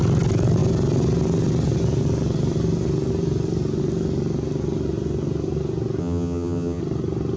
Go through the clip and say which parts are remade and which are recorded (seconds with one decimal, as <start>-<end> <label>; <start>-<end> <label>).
0.0-6.0 recorded; 6.0-6.8 remade; 6.8-7.4 recorded